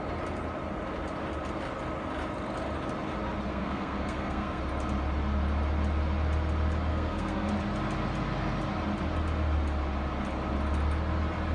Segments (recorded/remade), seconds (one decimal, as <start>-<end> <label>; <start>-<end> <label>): 0.0-3.5 recorded; 3.5-4.6 remade; 4.6-6.9 recorded; 6.9-7.5 remade; 7.5-11.5 recorded